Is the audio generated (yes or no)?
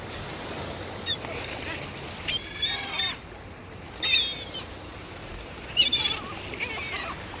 no